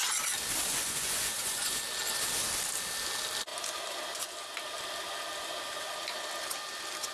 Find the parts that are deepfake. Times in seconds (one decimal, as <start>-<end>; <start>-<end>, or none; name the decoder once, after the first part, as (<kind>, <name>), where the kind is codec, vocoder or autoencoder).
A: 0.7-1.8 (vocoder, Vocos)